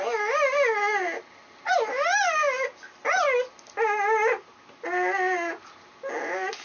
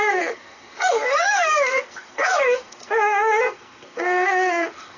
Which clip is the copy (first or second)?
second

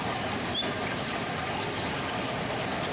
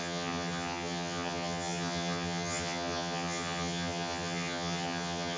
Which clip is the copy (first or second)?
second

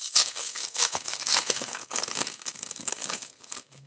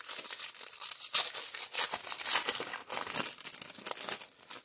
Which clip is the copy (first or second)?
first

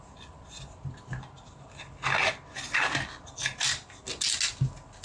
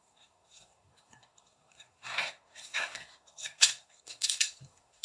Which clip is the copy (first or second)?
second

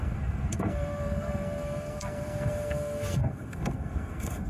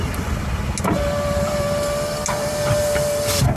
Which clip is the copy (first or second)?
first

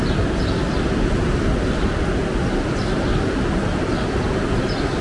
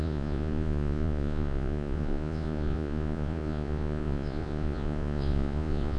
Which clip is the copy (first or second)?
second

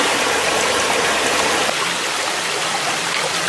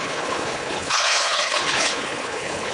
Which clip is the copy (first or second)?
second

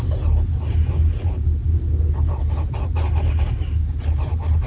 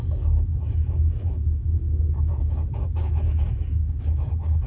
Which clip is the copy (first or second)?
second